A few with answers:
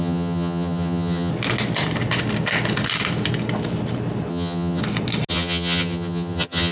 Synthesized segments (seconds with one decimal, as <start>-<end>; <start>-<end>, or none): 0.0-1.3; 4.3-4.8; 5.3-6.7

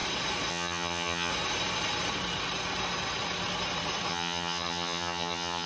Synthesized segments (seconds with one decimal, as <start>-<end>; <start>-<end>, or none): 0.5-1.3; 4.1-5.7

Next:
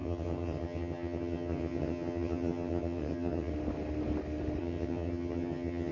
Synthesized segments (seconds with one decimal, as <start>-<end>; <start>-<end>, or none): 0.0-3.5; 4.6-5.9